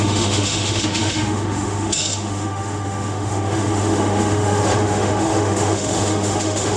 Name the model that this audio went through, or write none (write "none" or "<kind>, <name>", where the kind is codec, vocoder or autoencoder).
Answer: autoencoder, DAC-VAE